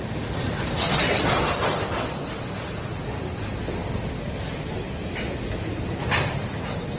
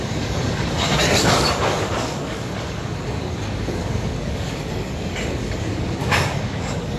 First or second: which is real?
first